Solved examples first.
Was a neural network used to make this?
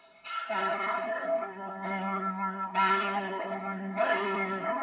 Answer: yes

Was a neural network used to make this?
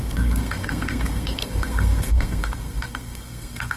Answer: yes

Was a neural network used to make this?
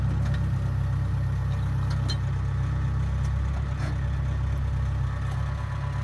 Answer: no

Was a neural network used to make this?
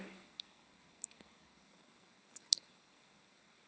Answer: yes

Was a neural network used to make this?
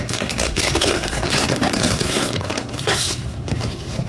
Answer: yes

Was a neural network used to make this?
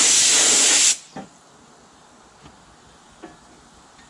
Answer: no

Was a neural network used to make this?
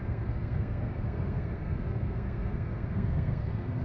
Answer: yes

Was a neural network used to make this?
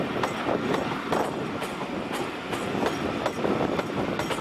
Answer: no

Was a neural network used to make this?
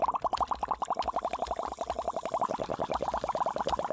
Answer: no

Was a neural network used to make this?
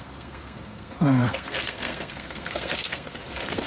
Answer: yes